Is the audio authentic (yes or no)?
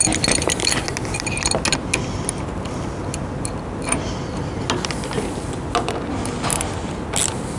yes